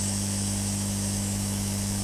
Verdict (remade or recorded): remade